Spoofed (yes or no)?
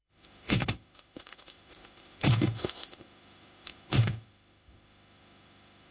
yes